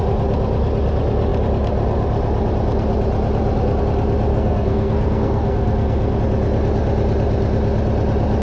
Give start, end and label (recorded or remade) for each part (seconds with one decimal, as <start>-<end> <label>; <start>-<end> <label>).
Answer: 0.0-4.3 recorded; 4.3-6.2 remade; 6.2-8.4 recorded